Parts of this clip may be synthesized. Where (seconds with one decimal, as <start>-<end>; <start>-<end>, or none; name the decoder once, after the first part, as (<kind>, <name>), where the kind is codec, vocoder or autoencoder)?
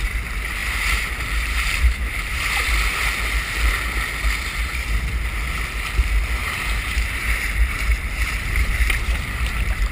0.6-2.4 (vocoder, BigVGAN v2); 6.4-9.9